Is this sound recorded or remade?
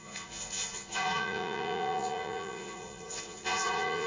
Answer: remade